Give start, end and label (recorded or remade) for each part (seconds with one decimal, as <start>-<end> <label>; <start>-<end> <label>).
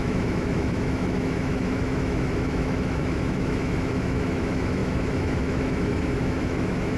0.0-7.0 remade